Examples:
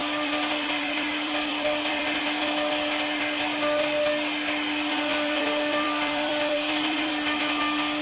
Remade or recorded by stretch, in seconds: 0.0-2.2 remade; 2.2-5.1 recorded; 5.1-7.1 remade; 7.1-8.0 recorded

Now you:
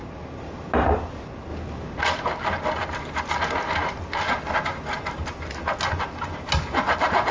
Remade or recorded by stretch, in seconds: 0.0-7.3 recorded

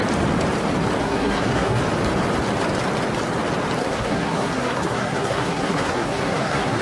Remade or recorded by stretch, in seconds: 0.0-1.0 recorded; 1.0-1.8 remade; 1.8-3.8 recorded; 3.8-6.8 remade

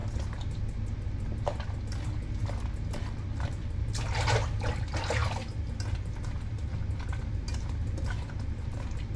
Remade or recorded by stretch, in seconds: 0.0-9.2 recorded

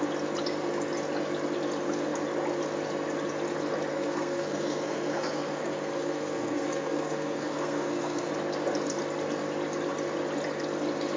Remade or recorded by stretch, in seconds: 0.0-3.9 recorded; 3.9-8.3 remade; 8.3-11.2 recorded